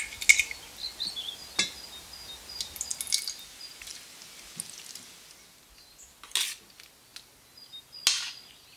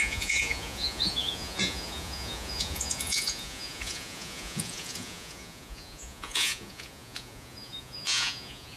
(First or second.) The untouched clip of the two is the first